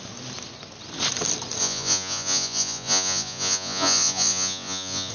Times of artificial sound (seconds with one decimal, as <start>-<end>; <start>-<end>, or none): 1.6-5.1